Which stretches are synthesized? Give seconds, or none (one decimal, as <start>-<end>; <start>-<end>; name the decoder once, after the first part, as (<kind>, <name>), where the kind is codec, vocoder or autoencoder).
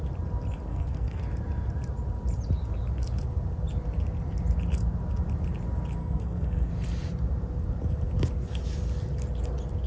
0.7-1.2 (codec, SNAC); 6.0-6.7